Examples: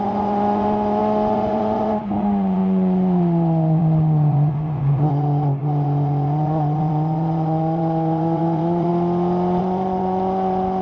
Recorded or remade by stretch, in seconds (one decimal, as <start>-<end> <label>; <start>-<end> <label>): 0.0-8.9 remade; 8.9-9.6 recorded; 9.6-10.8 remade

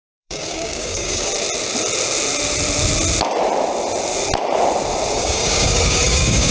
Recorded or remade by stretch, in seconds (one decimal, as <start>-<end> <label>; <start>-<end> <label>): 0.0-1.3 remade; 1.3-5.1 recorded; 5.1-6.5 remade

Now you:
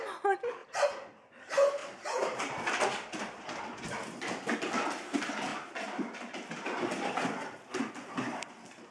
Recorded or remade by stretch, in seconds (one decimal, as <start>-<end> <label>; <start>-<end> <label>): 0.0-0.6 recorded; 0.6-1.2 remade; 1.2-1.8 recorded; 1.8-2.7 remade; 2.7-8.9 recorded

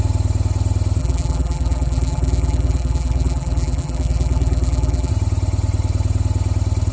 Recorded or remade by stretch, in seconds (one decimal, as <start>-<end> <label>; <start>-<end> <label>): 0.0-1.0 recorded; 1.0-5.1 remade; 5.1-6.9 recorded

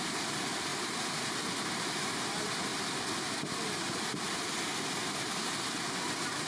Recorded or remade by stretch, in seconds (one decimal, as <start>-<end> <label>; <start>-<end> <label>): 0.0-6.5 recorded

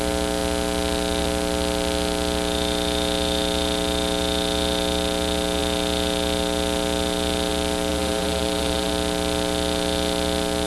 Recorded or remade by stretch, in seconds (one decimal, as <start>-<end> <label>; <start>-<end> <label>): 0.0-7.9 recorded; 7.9-8.9 remade; 8.9-10.7 recorded